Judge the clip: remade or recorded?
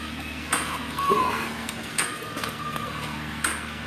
remade